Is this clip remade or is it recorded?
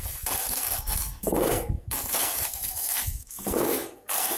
remade